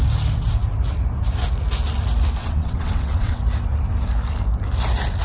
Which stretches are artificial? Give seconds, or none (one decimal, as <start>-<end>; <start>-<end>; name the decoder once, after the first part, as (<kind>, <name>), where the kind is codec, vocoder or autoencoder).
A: 2.4-3.4 (vocoder, WaveNeXt)